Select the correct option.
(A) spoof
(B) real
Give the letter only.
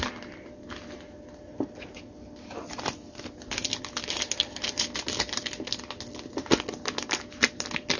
B